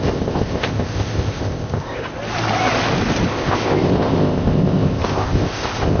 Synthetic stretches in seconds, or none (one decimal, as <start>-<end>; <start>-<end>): 0.0-2.0; 3.3-6.0